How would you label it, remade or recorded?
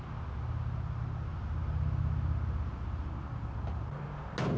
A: recorded